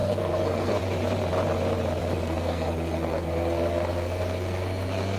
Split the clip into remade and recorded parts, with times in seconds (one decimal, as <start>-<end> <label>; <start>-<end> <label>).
0.0-0.8 remade; 0.8-2.0 recorded; 2.0-5.2 remade